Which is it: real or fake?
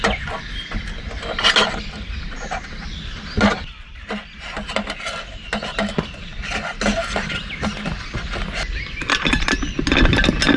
real